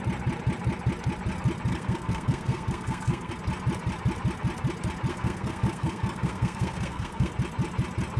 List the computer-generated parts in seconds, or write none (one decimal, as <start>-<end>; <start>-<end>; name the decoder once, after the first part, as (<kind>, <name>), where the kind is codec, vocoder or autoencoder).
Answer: 1.7-3.3 (codec, SNAC); 5.1-7.3